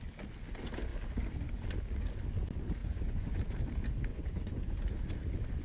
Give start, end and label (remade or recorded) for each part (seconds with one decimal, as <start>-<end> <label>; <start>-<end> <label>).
0.0-2.8 recorded; 2.8-3.4 remade; 3.4-4.1 recorded; 4.1-4.8 remade; 4.8-5.6 recorded